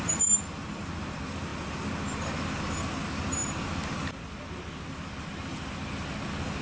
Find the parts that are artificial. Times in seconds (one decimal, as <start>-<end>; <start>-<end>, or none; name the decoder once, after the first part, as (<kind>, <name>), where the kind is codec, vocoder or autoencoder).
none